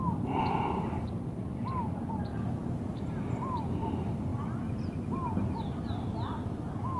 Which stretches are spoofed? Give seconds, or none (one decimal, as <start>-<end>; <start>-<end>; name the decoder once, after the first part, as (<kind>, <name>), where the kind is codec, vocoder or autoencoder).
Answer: 0.0-2.3 (vocoder, BigVGAN v2); 3.8-4.3; 5.6-7.0

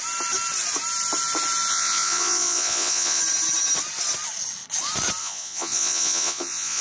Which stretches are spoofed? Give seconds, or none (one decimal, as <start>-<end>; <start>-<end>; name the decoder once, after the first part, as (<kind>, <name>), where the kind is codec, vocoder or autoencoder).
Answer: 1.7-3.2 (vocoder, Vocos); 5.2-6.8

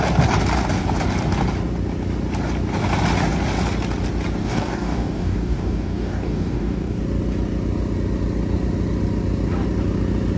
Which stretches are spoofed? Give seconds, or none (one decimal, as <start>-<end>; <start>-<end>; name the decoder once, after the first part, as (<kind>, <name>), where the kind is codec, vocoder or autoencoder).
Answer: 4.4-7.0 (codec, DAC)

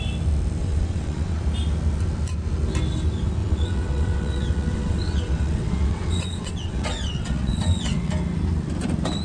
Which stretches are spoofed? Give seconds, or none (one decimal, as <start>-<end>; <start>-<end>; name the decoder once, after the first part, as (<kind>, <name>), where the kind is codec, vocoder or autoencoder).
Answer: 0.6-1.4 (vocoder, WaveNeXt); 3.4-8.1

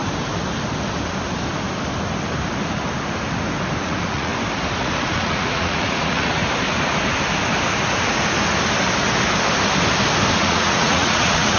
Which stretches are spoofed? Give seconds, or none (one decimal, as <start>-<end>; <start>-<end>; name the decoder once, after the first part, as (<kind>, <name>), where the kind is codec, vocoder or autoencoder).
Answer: 3.8-4.3 (vocoder, Vocos); 4.8-6.4; 10.4-11.6

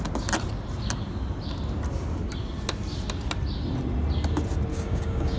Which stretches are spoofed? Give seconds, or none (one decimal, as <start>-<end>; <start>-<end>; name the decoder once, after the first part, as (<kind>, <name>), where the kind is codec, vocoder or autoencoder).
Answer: 4.7-5.4 (codec, DAC)

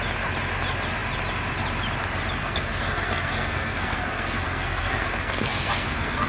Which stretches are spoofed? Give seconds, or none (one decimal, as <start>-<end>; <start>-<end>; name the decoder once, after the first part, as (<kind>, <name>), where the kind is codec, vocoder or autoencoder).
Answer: 2.4-6.3 (codec, SNAC)

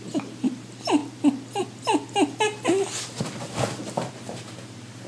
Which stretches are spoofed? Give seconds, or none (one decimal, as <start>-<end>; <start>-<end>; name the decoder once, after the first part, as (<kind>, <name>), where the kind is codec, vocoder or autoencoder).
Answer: 0.0-1.0 (vocoder, BigVGAN v2); 4.1-5.1